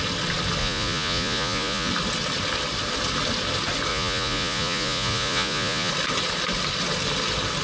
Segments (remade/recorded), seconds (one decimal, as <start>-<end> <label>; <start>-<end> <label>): 0.0-0.6 recorded; 0.6-1.9 remade; 1.9-3.9 recorded; 3.9-5.9 remade; 5.9-7.6 recorded